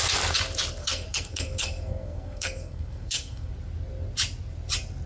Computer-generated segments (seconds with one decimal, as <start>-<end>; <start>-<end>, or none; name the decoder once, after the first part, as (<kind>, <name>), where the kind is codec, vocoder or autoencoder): 0.8-3.5 (codec, SNAC)